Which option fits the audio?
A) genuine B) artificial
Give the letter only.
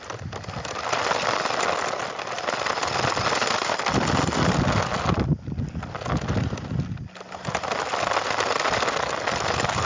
A